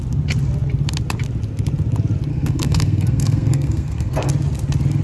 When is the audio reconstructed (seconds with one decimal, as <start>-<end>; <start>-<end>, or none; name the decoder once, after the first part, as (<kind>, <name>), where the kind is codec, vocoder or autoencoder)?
2.3-4.3 (codec, SNAC)